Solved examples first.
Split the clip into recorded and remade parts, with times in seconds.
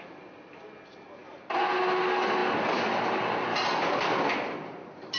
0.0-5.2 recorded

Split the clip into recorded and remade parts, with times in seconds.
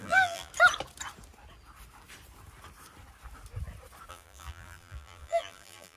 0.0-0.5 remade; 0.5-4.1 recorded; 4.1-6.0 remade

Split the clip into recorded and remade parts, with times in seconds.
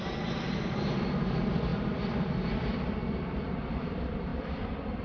0.0-5.0 remade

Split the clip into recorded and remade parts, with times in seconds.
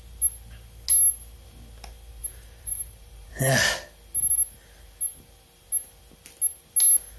0.0-2.2 recorded; 2.2-3.3 remade; 3.3-7.2 recorded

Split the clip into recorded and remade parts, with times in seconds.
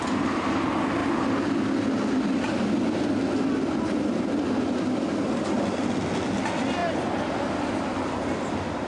0.0-8.9 recorded